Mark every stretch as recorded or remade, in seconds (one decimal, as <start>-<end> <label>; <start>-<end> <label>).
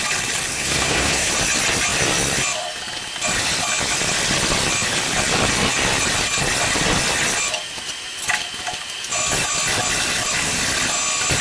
0.0-0.5 recorded; 0.5-1.3 remade; 1.3-11.4 recorded